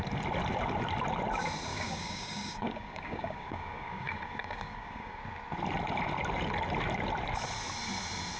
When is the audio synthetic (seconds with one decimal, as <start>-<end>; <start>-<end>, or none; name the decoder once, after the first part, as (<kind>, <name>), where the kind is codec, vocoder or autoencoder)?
1.7-5.2 (codec, DAC)